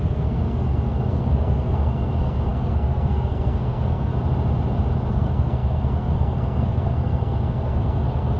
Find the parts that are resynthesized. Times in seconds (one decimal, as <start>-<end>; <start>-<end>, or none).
0.0-4.1; 5.1-8.4